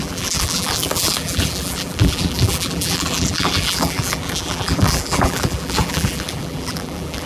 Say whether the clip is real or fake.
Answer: fake